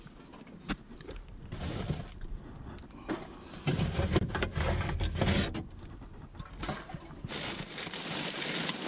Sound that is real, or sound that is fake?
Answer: real